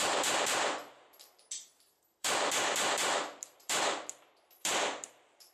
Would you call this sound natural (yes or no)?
no